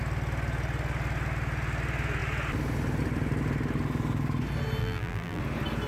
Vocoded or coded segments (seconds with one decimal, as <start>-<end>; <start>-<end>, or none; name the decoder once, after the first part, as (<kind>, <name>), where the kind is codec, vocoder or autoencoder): 4.8-5.4 (vocoder, BigVGAN v2)